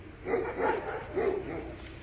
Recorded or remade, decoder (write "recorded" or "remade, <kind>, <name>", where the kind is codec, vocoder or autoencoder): recorded